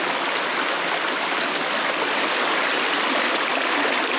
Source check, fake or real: real